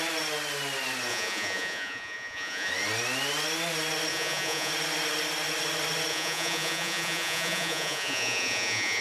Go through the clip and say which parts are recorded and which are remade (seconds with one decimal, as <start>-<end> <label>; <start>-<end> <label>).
0.0-1.1 recorded; 1.1-2.7 remade; 2.7-4.1 recorded; 4.1-4.7 remade; 4.7-6.1 recorded; 6.1-9.0 remade